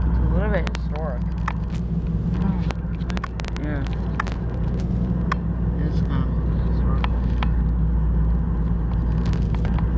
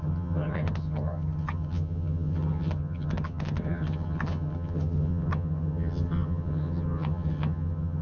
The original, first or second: first